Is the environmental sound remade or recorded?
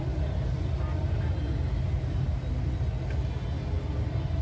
recorded